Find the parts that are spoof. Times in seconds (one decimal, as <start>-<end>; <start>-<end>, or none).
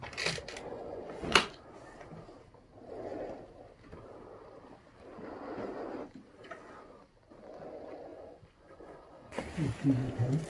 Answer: 0.7-1.6; 8.1-9.4